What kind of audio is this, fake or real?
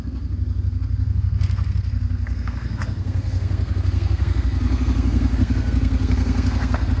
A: fake